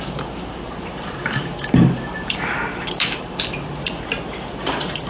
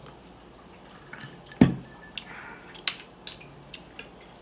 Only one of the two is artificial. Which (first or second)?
first